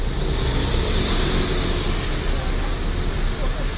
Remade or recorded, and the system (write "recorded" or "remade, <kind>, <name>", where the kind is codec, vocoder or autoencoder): recorded